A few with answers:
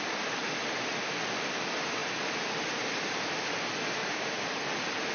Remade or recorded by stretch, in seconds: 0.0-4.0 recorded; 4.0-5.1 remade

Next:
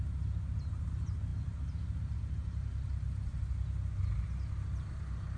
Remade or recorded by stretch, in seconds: 0.0-5.4 recorded